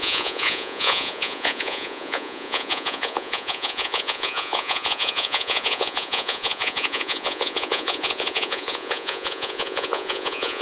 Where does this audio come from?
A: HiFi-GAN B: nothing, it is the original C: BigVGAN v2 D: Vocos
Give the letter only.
D